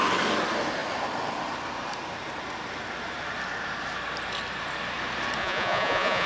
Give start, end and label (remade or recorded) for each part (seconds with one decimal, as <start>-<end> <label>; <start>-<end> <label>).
0.0-5.4 recorded; 5.4-6.3 remade